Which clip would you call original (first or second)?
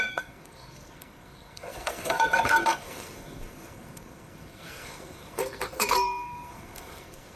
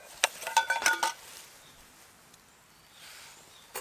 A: second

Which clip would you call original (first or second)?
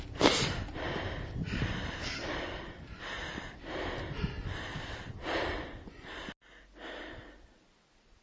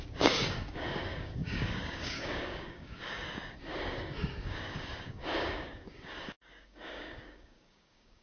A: first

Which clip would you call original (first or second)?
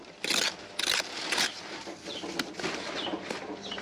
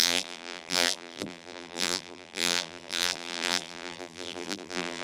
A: first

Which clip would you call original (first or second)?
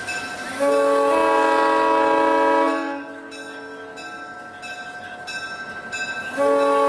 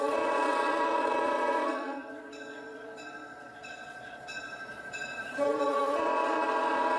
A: first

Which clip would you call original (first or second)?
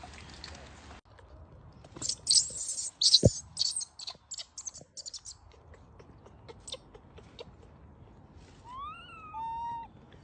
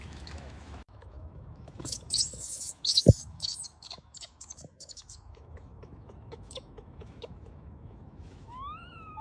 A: first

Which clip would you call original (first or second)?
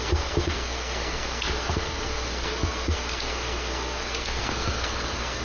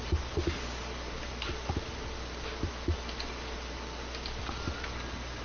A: second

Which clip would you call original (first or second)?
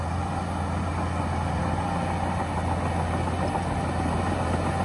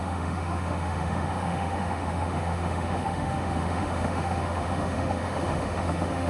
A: first